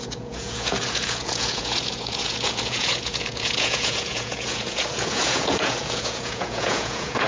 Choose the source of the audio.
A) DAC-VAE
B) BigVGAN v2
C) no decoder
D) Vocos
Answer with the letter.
D